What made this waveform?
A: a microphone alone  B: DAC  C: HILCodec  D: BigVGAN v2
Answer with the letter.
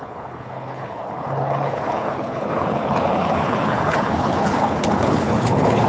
C